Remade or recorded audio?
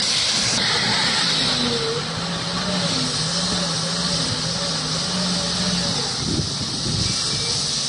recorded